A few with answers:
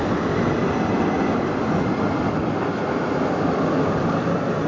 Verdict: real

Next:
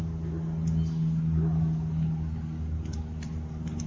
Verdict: real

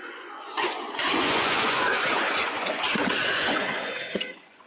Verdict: fake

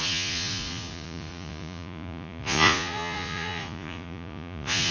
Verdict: fake